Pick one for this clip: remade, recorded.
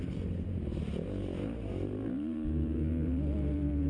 remade